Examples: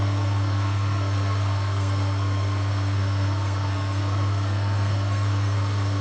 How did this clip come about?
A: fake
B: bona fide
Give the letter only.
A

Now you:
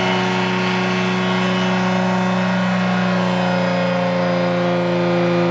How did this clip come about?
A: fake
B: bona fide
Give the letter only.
B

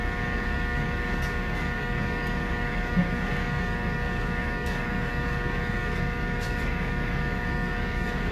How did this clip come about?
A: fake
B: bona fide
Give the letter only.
A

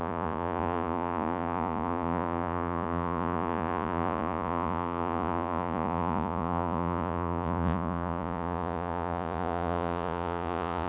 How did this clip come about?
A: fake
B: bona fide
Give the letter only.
A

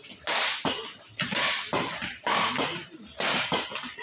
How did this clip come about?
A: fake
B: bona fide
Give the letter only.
B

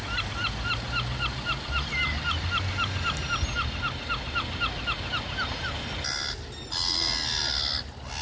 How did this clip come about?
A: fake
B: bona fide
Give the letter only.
B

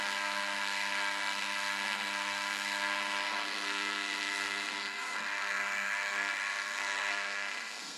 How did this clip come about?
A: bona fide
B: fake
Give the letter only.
B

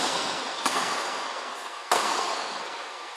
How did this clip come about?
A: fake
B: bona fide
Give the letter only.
A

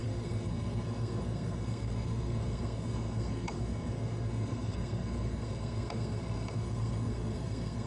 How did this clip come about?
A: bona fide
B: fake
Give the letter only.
B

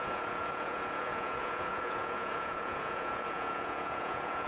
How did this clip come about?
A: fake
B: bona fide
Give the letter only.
A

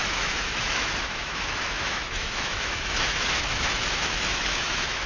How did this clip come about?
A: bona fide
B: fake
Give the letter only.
B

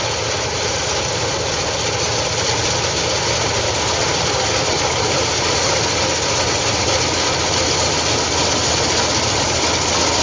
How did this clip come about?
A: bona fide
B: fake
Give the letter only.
A